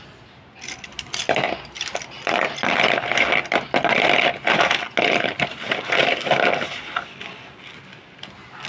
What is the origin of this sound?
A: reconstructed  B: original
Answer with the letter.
B